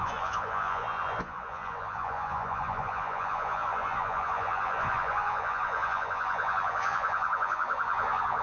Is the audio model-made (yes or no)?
yes